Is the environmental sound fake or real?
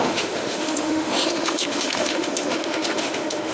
fake